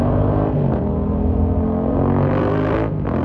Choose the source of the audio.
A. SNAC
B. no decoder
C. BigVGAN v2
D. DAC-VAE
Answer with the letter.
A